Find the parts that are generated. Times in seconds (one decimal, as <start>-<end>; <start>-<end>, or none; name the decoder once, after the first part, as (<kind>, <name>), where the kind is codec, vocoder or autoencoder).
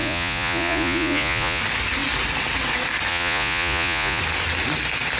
0.0-1.6 (vocoder, Vocos); 3.1-4.2